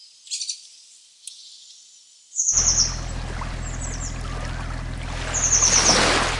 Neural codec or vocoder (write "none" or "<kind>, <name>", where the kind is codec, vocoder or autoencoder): none